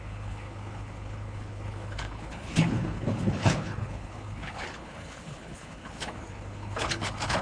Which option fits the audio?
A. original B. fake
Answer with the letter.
B